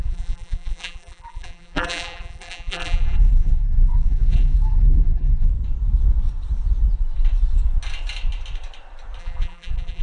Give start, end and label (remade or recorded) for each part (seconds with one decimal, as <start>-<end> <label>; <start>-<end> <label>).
0.0-5.5 remade; 5.5-9.2 recorded; 9.2-10.0 remade